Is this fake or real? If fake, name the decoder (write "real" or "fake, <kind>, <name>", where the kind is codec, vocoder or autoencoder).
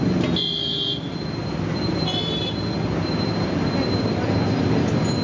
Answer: real